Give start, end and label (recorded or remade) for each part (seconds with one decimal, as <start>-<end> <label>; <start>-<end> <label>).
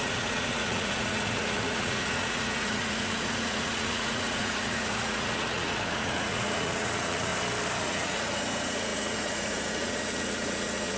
0.0-7.3 remade; 7.3-7.8 recorded; 7.8-11.0 remade